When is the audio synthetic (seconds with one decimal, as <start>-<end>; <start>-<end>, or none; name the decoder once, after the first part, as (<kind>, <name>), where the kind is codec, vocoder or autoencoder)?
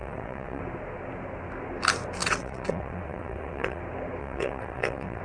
0.0-0.6 (vocoder, WaveNeXt); 2.2-3.8; 4.2-5.2